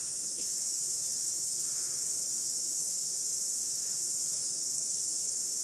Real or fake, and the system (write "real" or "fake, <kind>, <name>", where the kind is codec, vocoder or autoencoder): fake, autoencoder, DAC-VAE